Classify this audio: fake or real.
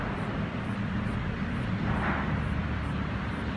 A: fake